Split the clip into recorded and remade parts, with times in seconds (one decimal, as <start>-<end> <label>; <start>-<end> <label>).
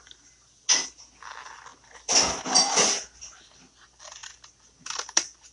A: 0.0-5.5 recorded